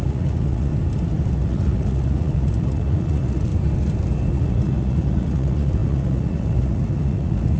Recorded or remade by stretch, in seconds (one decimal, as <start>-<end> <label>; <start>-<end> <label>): 0.0-0.7 remade; 0.7-1.4 recorded; 1.4-3.5 remade; 3.5-4.3 recorded; 4.3-7.6 remade